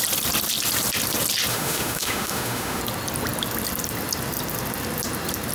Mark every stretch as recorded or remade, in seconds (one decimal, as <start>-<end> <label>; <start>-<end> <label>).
0.0-1.5 recorded; 1.5-2.8 remade; 2.8-5.5 recorded